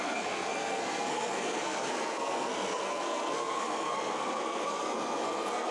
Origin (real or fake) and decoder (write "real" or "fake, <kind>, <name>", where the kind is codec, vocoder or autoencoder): fake, codec, SNAC